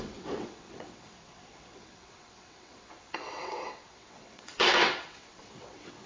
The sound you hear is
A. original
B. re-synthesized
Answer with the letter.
B